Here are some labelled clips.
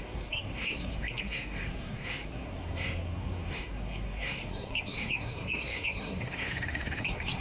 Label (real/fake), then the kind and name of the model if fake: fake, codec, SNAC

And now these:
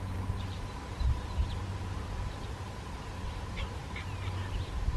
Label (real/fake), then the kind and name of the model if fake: real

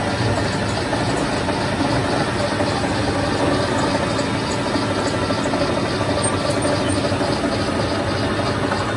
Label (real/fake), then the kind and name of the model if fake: real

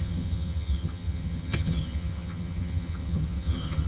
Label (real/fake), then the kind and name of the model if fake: fake, vocoder, HiFi-GAN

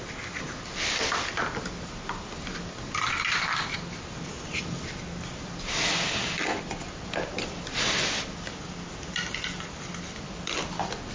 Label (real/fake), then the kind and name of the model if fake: real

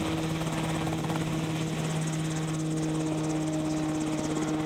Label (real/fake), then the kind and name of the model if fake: real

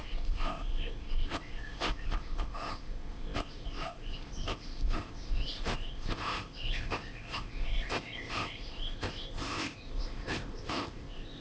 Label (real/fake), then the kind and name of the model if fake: fake, codec, ZipCodec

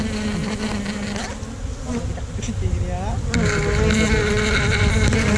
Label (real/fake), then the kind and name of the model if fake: real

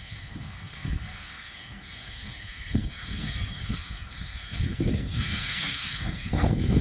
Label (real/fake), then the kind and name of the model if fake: fake, codec, SNAC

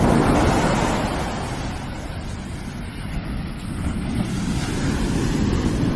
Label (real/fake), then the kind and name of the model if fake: real